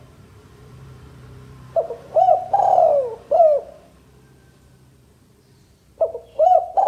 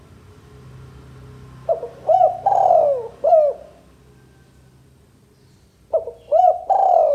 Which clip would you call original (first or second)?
second